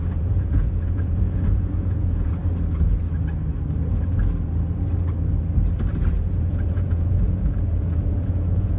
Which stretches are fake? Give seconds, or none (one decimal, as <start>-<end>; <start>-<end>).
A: 0.0-2.4; 6.1-8.8